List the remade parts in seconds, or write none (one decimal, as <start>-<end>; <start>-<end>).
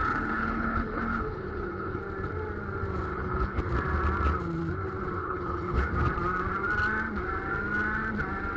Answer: 0.0-2.0; 3.1-3.6; 5.2-5.9